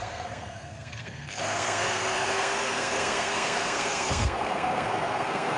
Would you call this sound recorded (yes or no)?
no